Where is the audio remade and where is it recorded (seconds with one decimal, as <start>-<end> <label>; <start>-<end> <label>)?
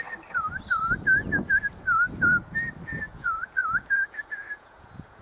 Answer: 0.0-3.1 recorded; 3.1-5.2 remade